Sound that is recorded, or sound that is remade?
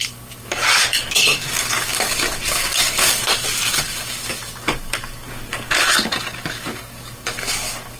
remade